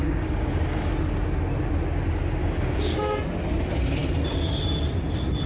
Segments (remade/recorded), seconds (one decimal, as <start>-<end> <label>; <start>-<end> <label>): 0.0-0.9 remade; 0.9-2.4 recorded; 2.4-3.0 remade; 3.0-5.5 recorded